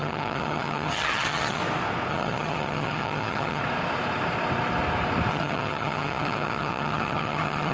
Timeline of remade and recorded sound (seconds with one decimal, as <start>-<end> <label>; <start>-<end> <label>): 0.0-1.6 remade; 1.6-2.1 recorded; 2.1-3.6 remade; 3.6-5.3 recorded; 5.3-7.7 remade